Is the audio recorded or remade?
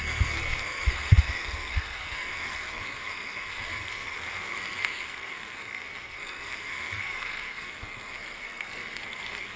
remade